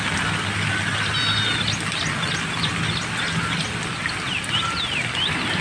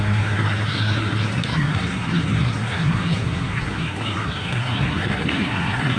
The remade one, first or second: second